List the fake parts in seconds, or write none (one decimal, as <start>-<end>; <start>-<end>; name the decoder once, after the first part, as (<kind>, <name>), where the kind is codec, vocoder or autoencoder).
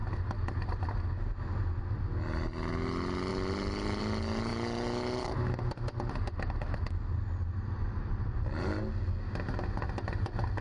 none